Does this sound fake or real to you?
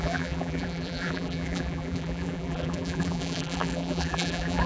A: fake